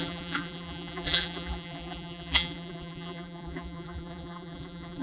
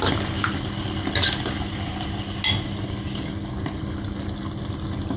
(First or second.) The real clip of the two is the second